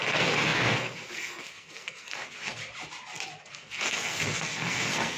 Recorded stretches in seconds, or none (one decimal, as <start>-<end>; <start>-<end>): 2.6-3.4